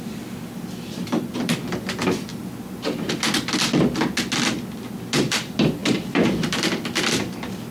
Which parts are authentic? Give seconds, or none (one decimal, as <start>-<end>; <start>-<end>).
2.3-5.2